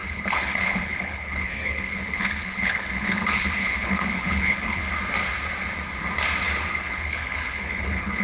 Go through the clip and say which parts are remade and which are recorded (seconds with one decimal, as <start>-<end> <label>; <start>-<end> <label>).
0.0-4.8 remade; 4.8-6.7 recorded; 6.7-8.2 remade